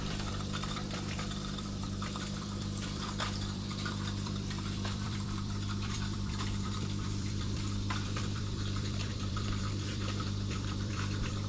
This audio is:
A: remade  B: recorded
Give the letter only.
A